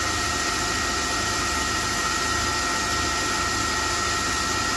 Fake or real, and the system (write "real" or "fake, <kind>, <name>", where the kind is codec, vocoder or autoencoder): real